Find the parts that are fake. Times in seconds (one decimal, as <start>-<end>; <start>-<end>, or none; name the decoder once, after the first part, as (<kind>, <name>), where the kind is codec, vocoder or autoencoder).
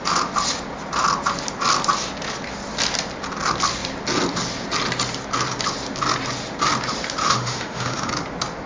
7.2-8.1 (autoencoder, DAC-VAE)